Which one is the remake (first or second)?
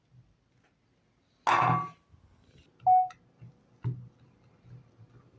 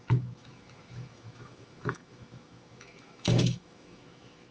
second